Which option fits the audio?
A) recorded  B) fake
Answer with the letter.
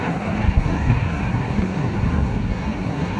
B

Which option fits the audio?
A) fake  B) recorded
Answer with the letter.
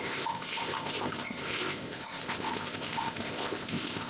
A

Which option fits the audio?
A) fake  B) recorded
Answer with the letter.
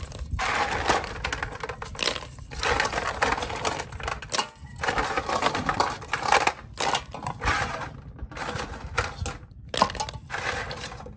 B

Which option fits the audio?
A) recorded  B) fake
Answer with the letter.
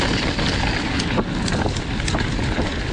A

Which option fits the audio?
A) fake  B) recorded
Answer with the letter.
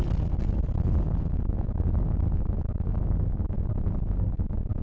B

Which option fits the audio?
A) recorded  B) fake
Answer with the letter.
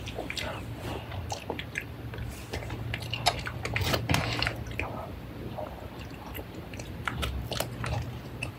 A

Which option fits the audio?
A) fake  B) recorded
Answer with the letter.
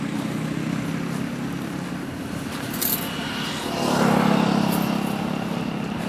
B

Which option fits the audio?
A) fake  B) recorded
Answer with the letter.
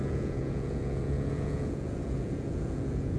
A